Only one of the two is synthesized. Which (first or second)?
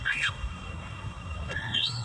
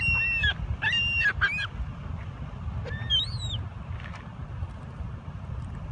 first